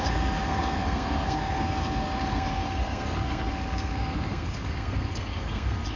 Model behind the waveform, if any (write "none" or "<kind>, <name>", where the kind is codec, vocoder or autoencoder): codec, SNAC